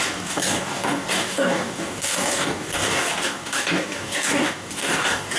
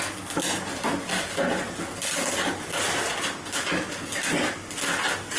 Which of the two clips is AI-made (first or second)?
first